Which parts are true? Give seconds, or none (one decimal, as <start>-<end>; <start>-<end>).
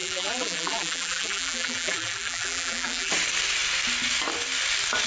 3.1-5.1